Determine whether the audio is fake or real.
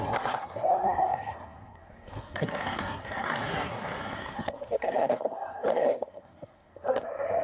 fake